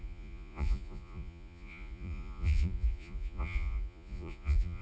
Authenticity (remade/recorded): remade